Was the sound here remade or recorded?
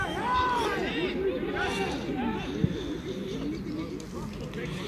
recorded